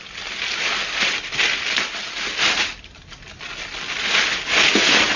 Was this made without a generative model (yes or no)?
yes